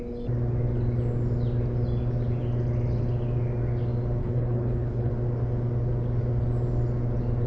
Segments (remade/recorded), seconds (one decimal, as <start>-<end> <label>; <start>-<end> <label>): 0.0-4.2 recorded; 4.2-5.1 remade; 5.1-7.5 recorded